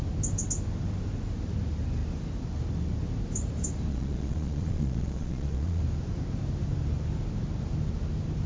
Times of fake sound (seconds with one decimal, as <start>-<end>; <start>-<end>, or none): 3.9-5.8